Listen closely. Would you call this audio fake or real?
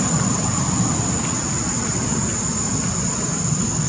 real